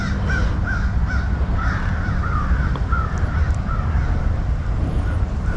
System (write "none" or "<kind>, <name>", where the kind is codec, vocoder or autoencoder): none